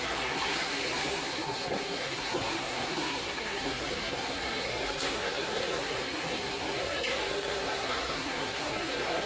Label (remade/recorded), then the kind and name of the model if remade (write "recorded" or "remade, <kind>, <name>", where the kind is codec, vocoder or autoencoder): remade, codec, SNAC